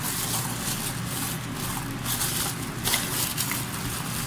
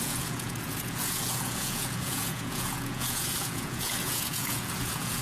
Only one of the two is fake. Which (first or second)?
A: second